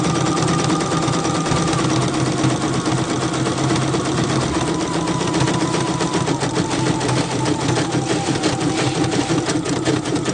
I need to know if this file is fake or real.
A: real